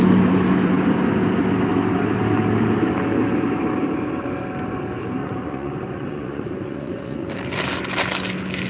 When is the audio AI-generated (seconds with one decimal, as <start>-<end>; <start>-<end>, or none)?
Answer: 5.2-7.3